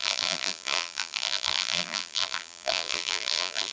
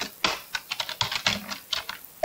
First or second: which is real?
second